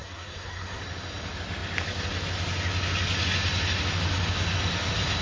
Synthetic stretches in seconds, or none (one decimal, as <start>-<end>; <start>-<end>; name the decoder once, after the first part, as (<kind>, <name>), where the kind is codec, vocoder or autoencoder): 0.0-0.8 (codec, SNAC)